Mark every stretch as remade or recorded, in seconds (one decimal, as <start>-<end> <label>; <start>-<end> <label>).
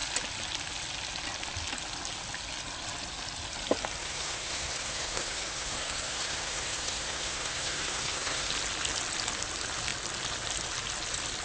0.0-4.0 recorded; 4.0-8.5 remade; 8.5-11.4 recorded